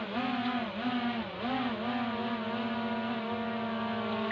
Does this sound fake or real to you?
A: real